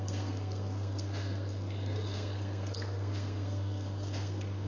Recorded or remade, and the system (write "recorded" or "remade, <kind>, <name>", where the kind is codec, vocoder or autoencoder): remade, codec, SNAC